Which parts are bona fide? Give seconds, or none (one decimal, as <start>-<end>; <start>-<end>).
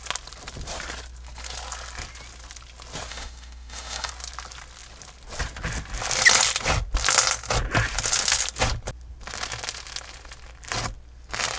0.0-3.1; 4.1-11.6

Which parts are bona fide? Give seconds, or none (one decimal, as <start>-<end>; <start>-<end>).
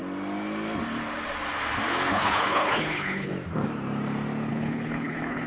0.0-2.1; 3.3-4.5